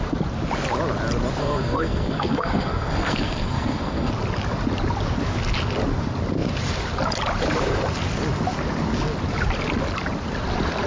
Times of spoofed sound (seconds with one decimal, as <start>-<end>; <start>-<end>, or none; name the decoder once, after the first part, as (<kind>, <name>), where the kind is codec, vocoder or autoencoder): 1.4-4.1 (codec, SNAC)

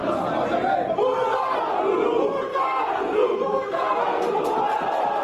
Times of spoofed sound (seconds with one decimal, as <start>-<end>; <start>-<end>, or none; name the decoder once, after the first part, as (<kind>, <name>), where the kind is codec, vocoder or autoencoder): 2.5-4.4 (codec, SNAC)

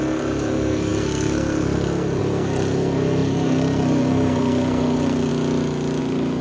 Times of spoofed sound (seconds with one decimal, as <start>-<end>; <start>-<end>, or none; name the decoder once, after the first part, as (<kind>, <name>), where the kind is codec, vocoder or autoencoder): 0.0-5.3 (codec, SNAC); 6.0-6.4

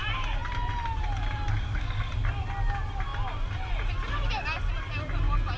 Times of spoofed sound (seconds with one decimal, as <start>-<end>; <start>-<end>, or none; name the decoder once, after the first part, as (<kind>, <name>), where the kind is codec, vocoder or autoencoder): 1.5-2.1 (codec, SNAC)

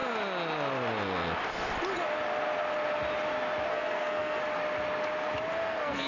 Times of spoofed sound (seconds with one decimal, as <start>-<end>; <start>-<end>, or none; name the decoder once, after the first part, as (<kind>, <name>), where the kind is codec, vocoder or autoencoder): 3.7-4.4 (codec, SNAC); 5.5-6.1

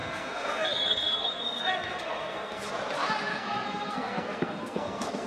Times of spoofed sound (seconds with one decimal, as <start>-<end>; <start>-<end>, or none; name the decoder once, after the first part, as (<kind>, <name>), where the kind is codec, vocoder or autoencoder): 0.0-2.7 (codec, SNAC); 3.3-5.3

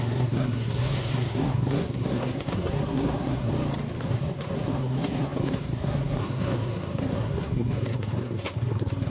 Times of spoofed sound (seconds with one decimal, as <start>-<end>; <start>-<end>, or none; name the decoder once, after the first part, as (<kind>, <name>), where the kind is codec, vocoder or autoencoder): 0.0-3.5 (codec, SNAC); 4.0-9.1